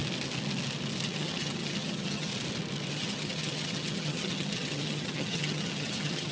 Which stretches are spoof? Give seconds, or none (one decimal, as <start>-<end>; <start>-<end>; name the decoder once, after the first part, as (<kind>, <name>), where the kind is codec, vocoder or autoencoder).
1.1-2.3 (vocoder, HiFi-GAN); 2.9-6.3